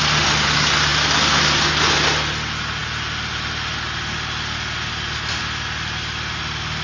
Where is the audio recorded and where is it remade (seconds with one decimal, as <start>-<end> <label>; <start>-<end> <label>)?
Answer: 0.0-6.8 recorded